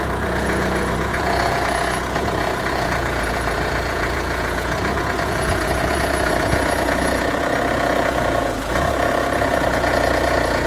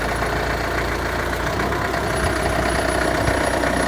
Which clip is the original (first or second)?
second